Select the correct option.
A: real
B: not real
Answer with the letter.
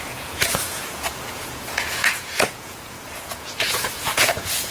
B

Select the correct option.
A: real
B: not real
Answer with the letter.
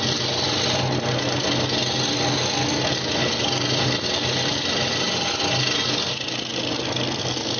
A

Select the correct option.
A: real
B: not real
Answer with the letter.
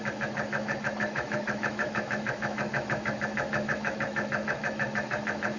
B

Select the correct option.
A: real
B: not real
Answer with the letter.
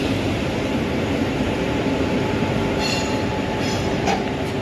B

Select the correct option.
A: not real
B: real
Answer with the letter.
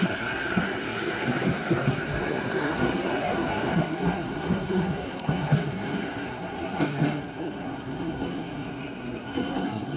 A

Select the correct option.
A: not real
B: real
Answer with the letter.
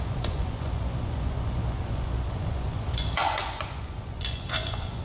A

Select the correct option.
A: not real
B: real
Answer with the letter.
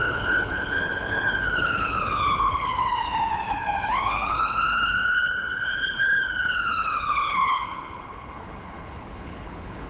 A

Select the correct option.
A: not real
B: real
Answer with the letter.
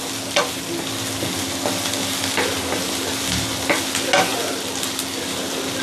B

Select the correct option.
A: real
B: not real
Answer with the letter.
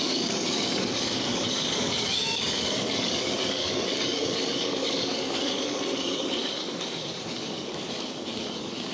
B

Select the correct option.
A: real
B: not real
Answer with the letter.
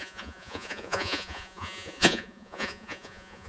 B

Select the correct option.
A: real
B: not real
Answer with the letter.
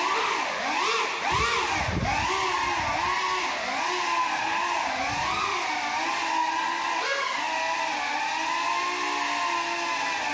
A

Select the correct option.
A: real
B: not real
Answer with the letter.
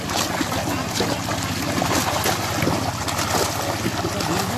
A